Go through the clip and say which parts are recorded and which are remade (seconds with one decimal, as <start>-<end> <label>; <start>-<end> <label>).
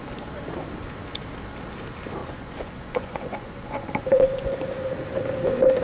0.0-2.2 recorded; 2.2-4.6 remade; 4.6-5.8 recorded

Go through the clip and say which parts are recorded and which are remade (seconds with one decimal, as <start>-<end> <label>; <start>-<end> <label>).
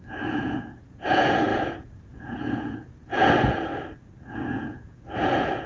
0.0-3.7 remade; 3.7-4.4 recorded; 4.4-5.7 remade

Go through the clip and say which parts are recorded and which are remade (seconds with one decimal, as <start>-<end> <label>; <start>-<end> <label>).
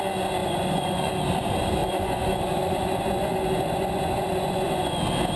0.0-0.4 recorded; 0.4-1.1 remade; 1.1-1.8 recorded; 1.8-5.0 remade; 5.0-5.4 recorded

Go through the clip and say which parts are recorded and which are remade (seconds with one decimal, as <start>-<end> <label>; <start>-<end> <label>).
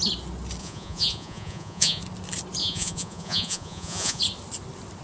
0.0-0.6 recorded; 0.6-2.0 remade; 2.0-2.6 recorded; 2.6-4.2 remade; 4.2-5.0 recorded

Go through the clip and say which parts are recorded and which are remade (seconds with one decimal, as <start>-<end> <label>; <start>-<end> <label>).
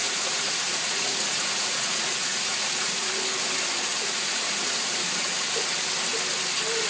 0.0-3.1 remade; 3.1-3.9 recorded; 3.9-5.1 remade; 5.1-6.9 recorded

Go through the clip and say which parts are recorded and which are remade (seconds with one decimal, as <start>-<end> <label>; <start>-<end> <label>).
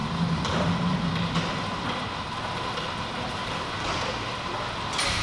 0.0-5.2 recorded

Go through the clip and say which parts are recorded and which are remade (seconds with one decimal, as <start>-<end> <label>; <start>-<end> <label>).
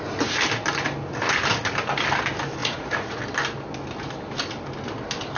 0.0-2.6 recorded; 2.6-3.2 remade; 3.2-5.4 recorded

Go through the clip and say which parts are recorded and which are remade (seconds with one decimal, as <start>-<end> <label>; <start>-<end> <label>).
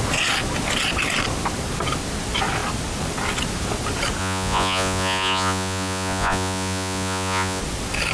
0.0-4.2 recorded; 4.2-7.6 remade; 7.6-8.1 recorded